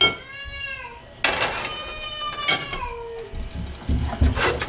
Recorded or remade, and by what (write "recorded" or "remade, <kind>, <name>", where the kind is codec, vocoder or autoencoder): recorded